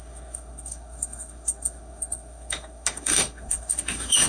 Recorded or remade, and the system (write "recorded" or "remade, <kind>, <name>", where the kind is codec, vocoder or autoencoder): remade, autoencoder, DAC-VAE